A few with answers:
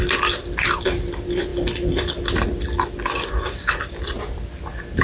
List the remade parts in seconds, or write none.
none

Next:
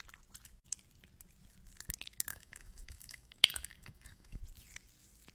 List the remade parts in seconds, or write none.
2.3-4.4 (codec, DAC)

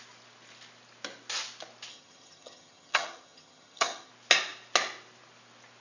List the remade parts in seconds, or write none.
1.9-4.1 (vocoder, HiFi-GAN)

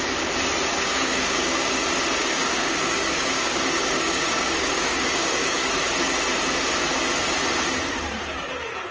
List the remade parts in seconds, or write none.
0.7-1.8 (codec, DAC); 2.2-5.8

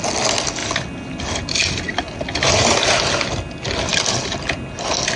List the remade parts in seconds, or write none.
none

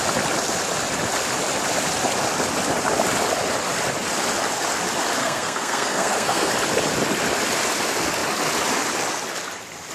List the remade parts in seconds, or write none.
5.2-6.5 (codec, SNAC)

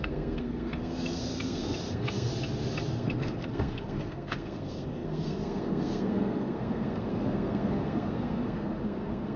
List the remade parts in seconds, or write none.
0.0-2.3 (codec, SNAC); 2.9-9.4